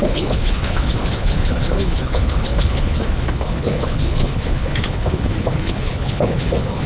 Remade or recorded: remade